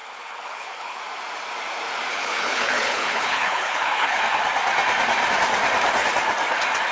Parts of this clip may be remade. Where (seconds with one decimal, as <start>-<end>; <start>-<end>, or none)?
0.0-1.0; 2.1-4.2